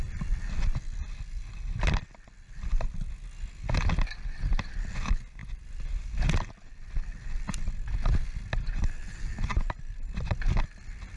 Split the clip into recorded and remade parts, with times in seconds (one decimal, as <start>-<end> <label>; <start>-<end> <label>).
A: 0.0-11.2 recorded